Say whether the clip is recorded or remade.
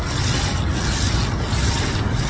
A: recorded